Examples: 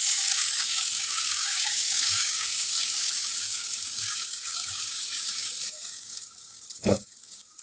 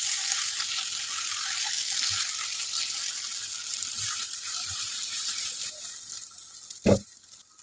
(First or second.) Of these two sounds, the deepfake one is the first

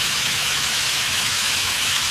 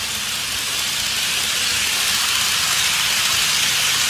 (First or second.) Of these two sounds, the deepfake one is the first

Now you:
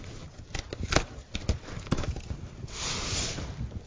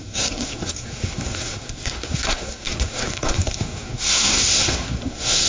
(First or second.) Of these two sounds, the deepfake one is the second